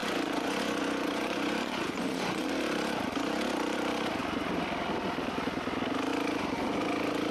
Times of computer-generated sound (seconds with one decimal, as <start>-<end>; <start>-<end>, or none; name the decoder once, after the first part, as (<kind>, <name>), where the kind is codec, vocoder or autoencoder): 0.0-2.5 (vocoder, Vocos)